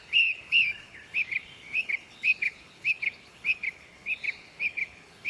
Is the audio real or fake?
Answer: fake